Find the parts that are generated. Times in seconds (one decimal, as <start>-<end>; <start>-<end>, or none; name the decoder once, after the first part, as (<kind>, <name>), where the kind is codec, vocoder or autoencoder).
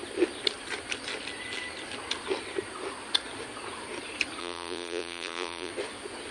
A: 4.4-5.7 (vocoder, BigVGAN v2)